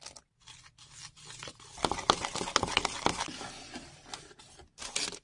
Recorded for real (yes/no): yes